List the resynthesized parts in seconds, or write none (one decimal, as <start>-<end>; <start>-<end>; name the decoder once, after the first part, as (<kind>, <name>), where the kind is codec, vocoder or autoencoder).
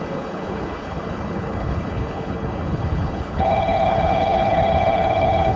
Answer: 0.0-5.6 (codec, HILCodec)